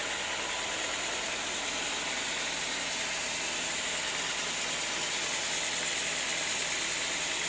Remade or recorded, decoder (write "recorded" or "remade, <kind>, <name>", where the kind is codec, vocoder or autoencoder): recorded